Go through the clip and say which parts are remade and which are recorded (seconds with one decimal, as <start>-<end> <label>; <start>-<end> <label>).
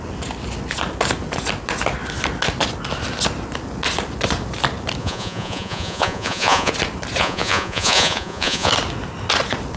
0.0-5.0 recorded; 5.0-6.7 remade; 6.7-7.2 recorded; 7.2-8.7 remade; 8.7-9.8 recorded